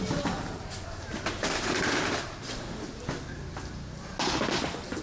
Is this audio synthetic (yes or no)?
no